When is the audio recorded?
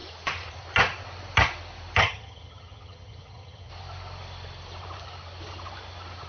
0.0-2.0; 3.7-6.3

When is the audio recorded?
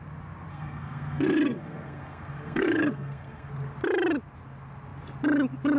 0.0-0.5; 3.5-5.8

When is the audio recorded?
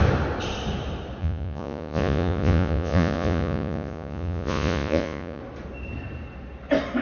0.0-1.2; 5.4-7.0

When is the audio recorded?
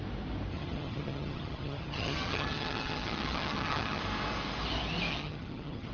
0.0-0.5; 4.0-5.1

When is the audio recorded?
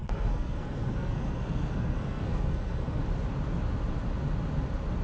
3.0-5.0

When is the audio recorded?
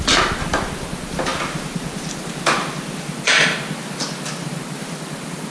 0.0-5.5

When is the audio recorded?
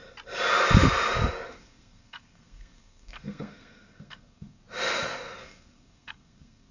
0.0-1.5; 4.6-5.4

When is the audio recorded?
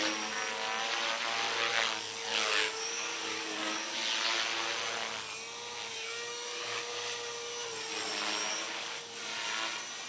0.0-1.7; 4.0-5.9; 6.9-8.5; 9.2-10.1